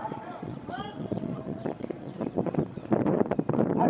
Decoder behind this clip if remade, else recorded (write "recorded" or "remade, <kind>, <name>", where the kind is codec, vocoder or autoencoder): remade, vocoder, Vocos